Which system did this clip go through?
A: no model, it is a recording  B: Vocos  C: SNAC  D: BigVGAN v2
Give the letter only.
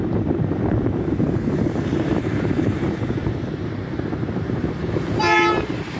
D